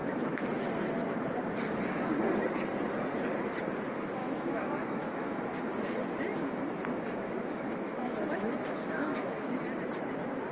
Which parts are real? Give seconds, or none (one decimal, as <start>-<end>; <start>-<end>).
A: 0.7-4.2; 5.4-6.3; 9.5-10.5